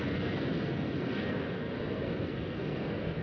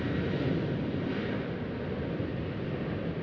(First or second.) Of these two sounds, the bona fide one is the second